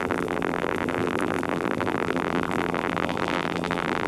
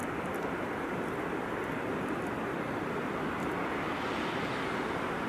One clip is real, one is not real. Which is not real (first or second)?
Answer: first